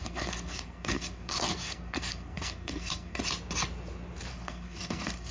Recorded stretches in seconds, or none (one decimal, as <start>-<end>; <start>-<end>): 3.2-4.3